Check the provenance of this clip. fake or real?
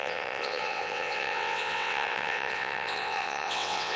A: fake